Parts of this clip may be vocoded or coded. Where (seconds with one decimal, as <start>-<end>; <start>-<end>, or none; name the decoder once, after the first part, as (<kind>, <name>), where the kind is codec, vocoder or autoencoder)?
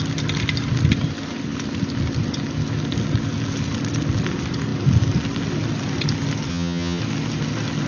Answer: 6.5-7.0 (vocoder, HiFi-GAN)